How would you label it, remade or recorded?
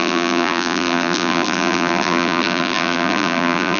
remade